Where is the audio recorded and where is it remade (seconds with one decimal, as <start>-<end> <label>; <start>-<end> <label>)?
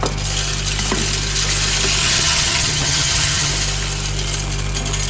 0.0-2.0 recorded; 2.0-3.5 remade; 3.5-5.1 recorded